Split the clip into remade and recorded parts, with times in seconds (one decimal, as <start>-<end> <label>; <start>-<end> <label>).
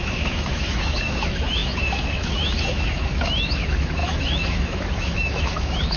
0.0-6.0 remade